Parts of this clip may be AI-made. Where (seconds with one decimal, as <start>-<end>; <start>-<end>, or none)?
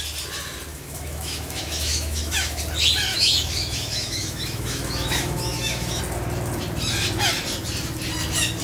0.7-2.6; 3.1-6.0